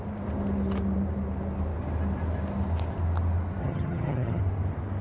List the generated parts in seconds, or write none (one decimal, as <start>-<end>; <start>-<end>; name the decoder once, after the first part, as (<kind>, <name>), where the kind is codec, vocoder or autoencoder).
3.6-4.4 (vocoder, HiFi-GAN)